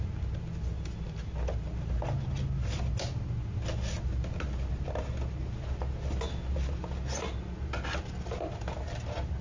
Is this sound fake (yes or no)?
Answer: no